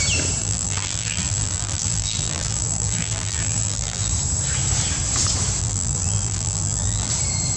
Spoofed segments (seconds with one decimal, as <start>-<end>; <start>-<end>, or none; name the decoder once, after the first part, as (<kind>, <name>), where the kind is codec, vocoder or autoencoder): 0.4-4.1 (vocoder, BigVGAN v2); 5.6-7.1